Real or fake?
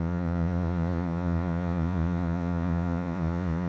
fake